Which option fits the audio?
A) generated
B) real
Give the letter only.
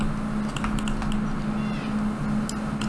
B